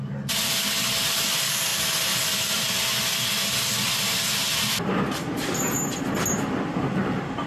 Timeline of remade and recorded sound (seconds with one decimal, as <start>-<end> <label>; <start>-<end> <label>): 0.0-7.5 recorded